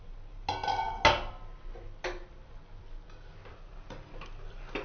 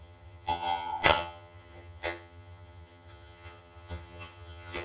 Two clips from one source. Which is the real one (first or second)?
first